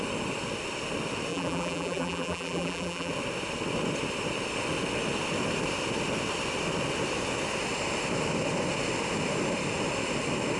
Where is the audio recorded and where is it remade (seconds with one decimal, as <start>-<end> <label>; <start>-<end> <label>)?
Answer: 0.0-1.3 recorded; 1.3-3.1 remade; 3.1-10.6 recorded